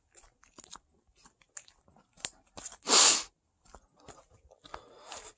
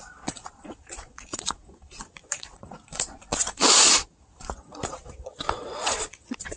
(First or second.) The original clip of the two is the first